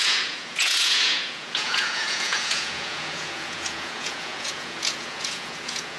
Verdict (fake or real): fake